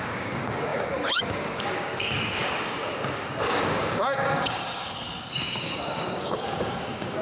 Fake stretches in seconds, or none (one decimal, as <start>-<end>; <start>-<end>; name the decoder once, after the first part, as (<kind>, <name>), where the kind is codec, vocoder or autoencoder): 0.0-7.2 (codec, DAC)